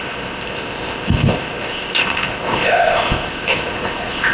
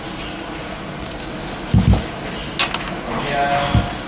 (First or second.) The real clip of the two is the second